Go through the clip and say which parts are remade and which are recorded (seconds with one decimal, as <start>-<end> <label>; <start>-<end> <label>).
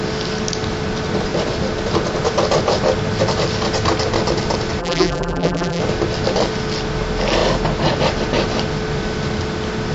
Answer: 0.0-4.8 recorded; 4.8-5.8 remade; 5.8-9.9 recorded